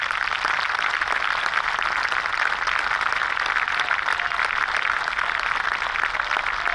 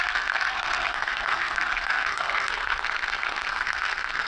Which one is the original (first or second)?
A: first